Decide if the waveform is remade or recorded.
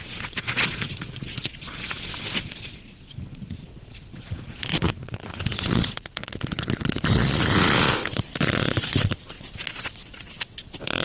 remade